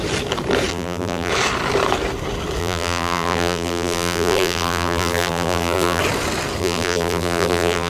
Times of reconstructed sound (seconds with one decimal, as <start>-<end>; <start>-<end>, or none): 0.7-1.3; 2.6-6.0; 6.6-7.9

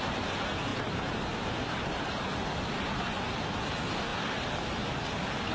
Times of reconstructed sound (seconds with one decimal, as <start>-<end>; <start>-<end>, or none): 0.7-2.5; 4.1-4.9

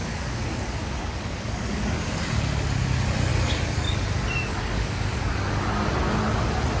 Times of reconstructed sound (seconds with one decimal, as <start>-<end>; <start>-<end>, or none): 0.0-2.2; 3.3-4.0; 4.5-5.5

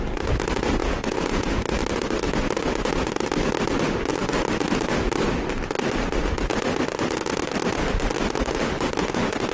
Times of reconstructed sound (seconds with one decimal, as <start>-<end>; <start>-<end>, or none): 0.8-1.6

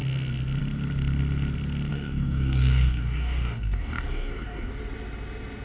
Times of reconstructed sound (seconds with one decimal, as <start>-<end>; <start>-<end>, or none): 1.9-4.7

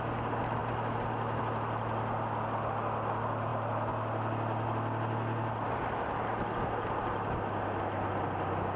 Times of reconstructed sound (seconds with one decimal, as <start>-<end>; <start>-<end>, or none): none